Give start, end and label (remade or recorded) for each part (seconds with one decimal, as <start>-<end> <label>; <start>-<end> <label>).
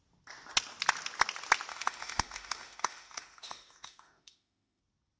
0.0-1.7 recorded; 1.7-4.8 remade; 4.8-5.2 recorded